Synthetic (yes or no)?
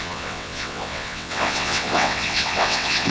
yes